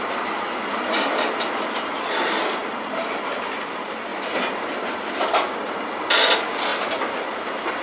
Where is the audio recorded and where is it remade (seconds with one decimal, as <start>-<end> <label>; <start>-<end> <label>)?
0.0-7.8 recorded